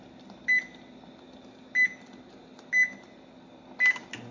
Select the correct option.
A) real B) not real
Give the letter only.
A